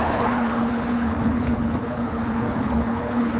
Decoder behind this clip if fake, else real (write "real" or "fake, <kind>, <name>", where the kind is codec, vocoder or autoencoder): fake, codec, HILCodec